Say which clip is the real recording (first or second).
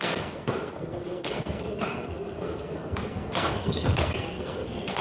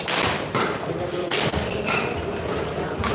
second